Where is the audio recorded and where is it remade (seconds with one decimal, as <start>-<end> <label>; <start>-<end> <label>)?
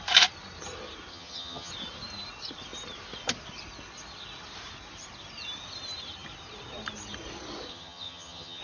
0.0-1.1 recorded; 1.1-1.7 remade; 1.7-7.7 recorded; 7.7-8.6 remade